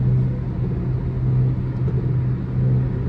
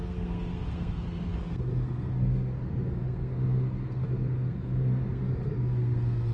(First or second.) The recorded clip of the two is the first